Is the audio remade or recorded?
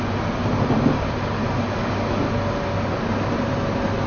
recorded